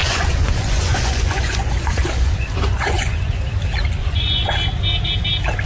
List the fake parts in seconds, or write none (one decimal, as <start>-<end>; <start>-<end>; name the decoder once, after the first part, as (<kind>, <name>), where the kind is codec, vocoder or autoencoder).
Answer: 0.0-3.4 (vocoder, Vocos); 4.0-4.6